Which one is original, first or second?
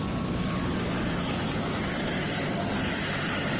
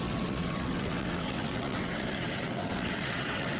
first